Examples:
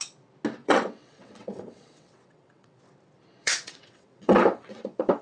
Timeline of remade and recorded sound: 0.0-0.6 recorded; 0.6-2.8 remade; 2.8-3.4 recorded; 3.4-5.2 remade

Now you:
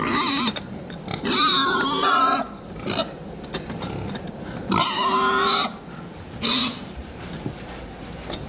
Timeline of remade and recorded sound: 0.0-8.5 recorded

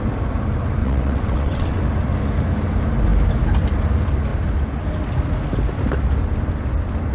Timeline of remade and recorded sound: 0.0-0.8 recorded; 0.8-1.8 remade; 1.8-7.1 recorded

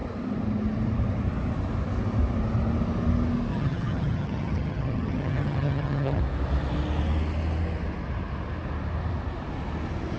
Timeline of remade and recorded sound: 0.0-3.5 recorded; 3.5-6.2 remade; 6.2-10.2 recorded

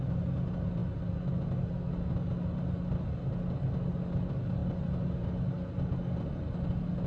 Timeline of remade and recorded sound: 0.0-7.1 recorded

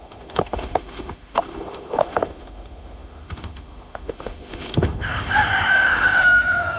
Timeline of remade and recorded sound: 0.0-6.8 remade